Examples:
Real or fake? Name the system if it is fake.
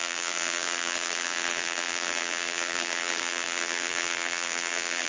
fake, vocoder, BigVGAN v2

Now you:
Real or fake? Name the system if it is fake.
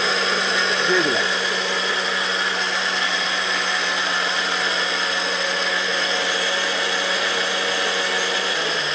real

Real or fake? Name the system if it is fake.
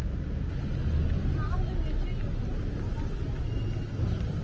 real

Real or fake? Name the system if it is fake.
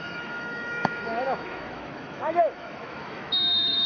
fake, autoencoder, DAC-VAE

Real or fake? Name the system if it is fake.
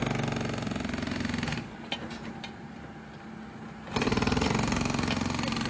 real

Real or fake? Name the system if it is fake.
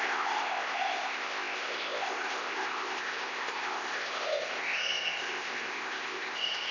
fake, codec, ZipCodec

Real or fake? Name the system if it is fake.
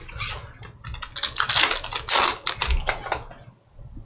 real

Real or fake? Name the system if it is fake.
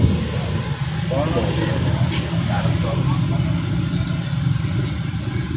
real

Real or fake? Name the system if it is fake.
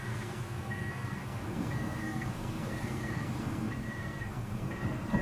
fake, codec, SNAC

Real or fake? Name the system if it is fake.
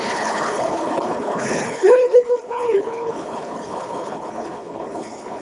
fake, codec, HILCodec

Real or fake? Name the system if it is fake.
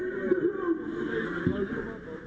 real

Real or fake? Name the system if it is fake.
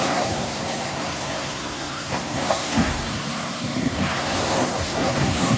fake, codec, SNAC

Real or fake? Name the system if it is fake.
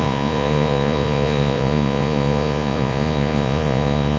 fake, vocoder, Vocos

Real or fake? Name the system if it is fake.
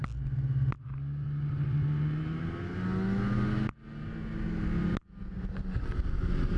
real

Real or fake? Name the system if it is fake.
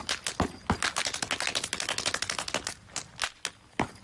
real